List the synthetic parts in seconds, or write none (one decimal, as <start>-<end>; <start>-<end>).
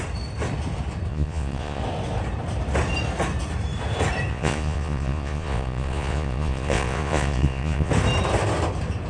1.1-1.8; 4.3-7.9